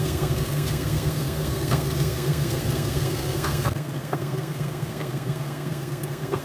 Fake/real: fake